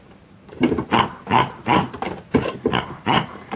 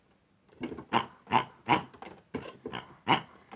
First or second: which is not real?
first